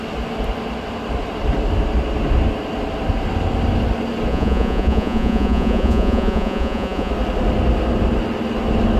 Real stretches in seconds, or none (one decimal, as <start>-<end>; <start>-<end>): 0.0-4.3; 7.1-9.0